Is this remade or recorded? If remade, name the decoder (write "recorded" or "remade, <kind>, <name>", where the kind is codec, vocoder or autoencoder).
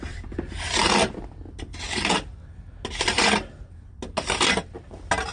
recorded